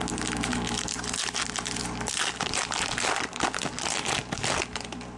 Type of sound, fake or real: real